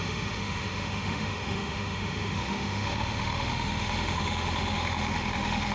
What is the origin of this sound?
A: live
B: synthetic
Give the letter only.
B